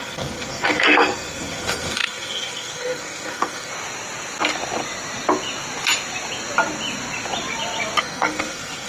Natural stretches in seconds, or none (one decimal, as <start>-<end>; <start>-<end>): 3.7-8.0